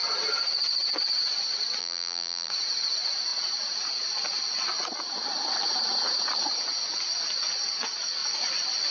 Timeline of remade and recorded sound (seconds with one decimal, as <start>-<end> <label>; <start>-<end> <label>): 0.0-1.8 recorded; 1.8-2.5 remade; 2.5-8.9 recorded